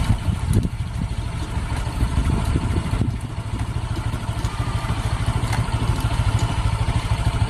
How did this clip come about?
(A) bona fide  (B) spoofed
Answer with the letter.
B